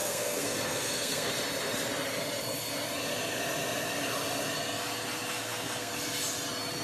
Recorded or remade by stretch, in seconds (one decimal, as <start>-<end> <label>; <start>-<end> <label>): 0.0-1.3 remade; 1.3-5.3 recorded; 5.3-5.9 remade; 5.9-6.8 recorded